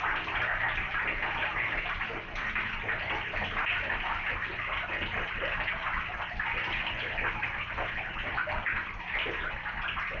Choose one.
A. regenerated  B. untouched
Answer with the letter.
B